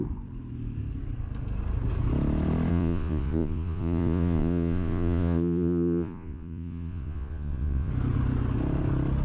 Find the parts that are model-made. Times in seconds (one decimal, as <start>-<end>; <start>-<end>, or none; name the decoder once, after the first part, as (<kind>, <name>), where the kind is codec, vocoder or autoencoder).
2.7-7.9 (vocoder, Vocos)